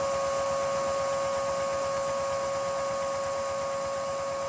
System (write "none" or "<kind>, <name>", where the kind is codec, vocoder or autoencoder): none